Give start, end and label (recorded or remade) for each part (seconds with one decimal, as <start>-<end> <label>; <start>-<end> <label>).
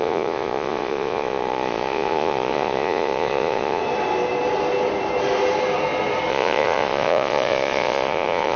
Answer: 0.0-3.8 remade; 3.8-6.3 recorded; 6.3-8.6 remade